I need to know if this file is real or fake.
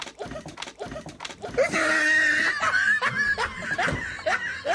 real